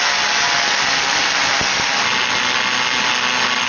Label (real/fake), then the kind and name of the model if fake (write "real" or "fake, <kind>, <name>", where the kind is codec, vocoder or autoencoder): real